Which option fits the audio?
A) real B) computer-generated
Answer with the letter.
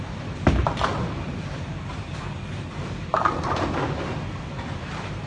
B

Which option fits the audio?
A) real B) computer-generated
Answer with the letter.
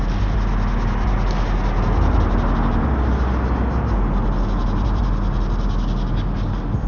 A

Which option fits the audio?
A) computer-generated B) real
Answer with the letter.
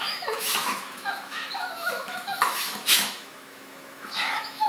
A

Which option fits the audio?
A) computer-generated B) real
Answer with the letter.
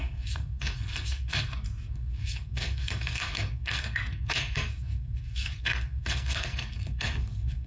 A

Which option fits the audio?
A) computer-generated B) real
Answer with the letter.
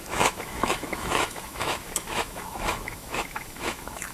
A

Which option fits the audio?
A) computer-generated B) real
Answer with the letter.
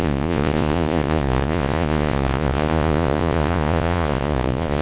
A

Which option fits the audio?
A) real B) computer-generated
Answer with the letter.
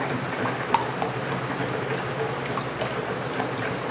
A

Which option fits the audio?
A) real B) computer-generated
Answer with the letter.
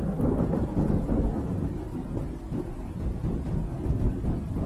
A